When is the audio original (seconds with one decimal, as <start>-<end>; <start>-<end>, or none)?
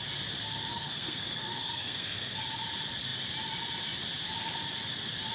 0.0-0.7; 2.4-5.3